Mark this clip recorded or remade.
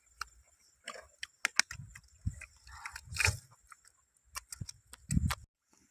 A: recorded